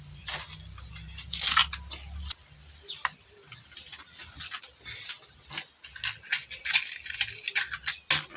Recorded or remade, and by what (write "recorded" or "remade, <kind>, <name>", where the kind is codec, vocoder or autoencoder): recorded